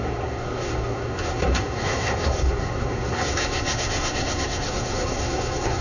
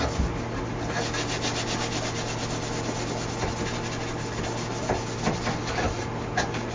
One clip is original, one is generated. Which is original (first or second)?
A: second